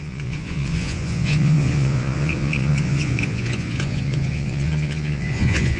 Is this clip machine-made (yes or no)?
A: yes